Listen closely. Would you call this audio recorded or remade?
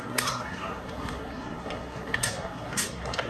remade